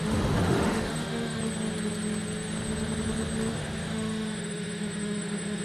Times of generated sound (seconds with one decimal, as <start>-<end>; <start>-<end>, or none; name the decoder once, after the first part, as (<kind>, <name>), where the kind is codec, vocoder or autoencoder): 0.0-1.4 (autoencoder, DAC-VAE); 3.5-5.6